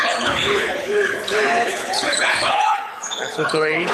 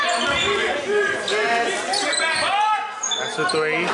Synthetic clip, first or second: first